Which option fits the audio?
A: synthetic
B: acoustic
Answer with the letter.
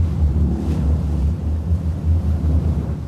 A